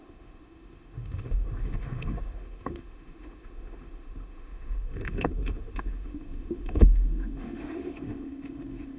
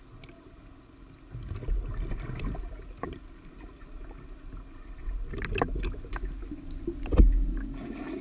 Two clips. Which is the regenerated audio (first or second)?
first